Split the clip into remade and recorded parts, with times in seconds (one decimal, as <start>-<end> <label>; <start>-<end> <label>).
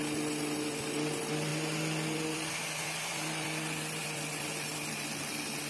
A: 0.0-5.7 recorded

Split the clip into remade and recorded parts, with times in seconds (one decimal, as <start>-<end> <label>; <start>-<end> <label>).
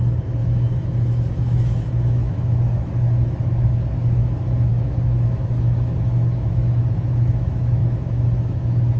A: 0.0-9.0 remade